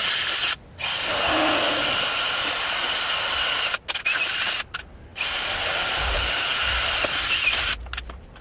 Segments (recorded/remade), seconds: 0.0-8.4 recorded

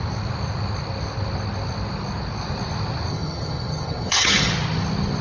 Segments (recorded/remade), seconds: 0.0-3.1 recorded; 3.1-4.5 remade; 4.5-5.2 recorded

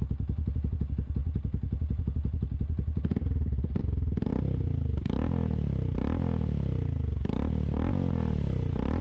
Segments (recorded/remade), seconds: 0.0-9.0 recorded

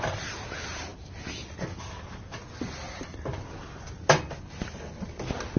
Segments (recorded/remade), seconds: 0.0-5.6 recorded

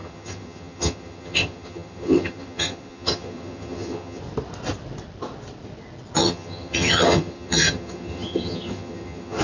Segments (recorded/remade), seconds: 0.0-4.2 remade; 4.2-6.2 recorded; 6.2-9.4 remade